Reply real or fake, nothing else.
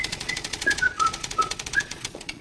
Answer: fake